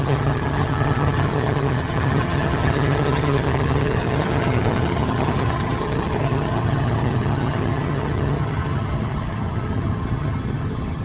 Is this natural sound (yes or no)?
no